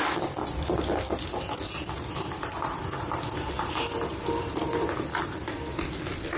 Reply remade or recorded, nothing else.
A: recorded